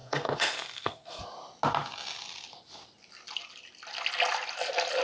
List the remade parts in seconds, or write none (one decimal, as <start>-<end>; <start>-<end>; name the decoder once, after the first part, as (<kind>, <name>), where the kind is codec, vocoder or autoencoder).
0.0-1.2 (codec, SNAC)